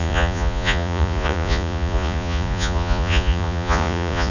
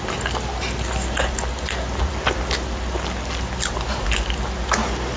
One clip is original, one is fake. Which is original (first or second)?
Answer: second